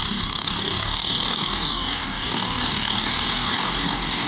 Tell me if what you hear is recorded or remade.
remade